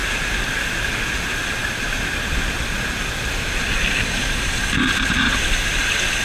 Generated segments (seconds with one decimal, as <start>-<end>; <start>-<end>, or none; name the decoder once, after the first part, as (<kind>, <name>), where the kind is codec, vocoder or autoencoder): none